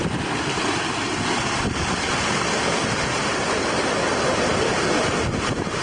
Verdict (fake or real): real